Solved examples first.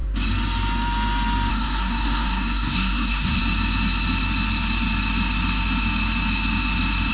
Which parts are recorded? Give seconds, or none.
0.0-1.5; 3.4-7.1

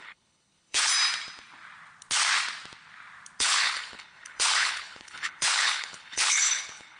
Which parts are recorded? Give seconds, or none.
0.9-3.4

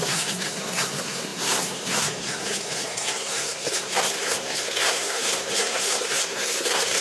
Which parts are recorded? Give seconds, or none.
none